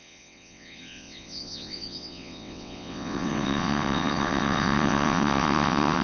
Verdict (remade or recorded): remade